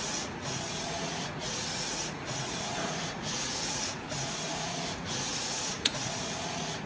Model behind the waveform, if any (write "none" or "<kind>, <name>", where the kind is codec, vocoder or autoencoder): vocoder, Vocos